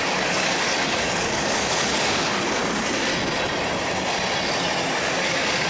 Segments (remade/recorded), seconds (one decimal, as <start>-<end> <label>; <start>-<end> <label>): 0.0-3.1 remade; 3.1-5.0 recorded; 5.0-5.7 remade